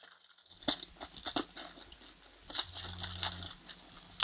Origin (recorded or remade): recorded